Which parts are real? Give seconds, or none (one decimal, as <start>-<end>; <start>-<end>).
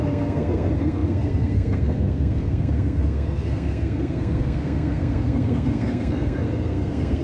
none